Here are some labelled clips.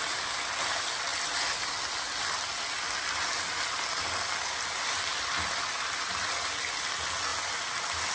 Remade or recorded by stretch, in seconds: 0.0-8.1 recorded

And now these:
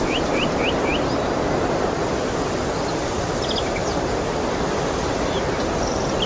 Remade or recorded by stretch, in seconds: 0.0-6.3 recorded

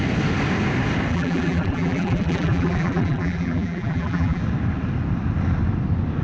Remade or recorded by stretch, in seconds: 0.0-1.1 recorded; 1.1-4.4 remade; 4.4-6.2 recorded